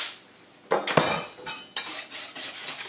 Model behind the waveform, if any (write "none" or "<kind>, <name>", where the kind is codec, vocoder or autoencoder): none